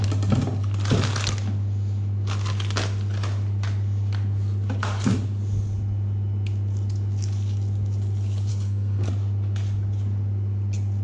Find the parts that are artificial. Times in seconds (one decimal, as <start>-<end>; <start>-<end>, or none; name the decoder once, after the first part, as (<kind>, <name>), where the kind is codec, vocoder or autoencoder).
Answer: 8.5-9.1 (codec, SNAC)